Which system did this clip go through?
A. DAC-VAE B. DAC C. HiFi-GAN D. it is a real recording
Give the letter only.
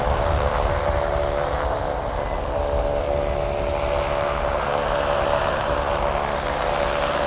D